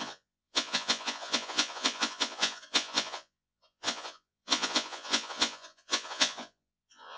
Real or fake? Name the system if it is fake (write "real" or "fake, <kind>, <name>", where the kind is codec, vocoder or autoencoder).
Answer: fake, vocoder, Vocos